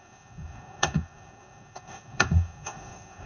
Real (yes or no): no